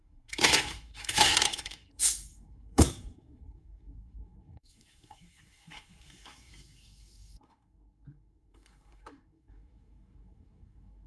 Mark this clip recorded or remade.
remade